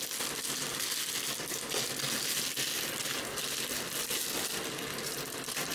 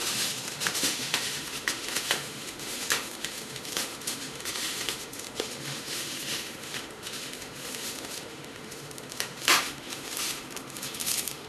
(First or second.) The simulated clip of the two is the second